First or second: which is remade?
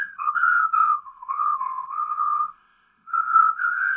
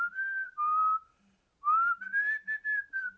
first